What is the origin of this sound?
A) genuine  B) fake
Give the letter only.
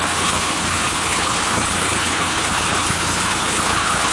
B